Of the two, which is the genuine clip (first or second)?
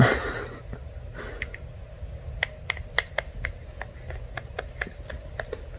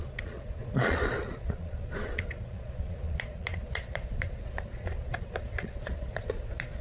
first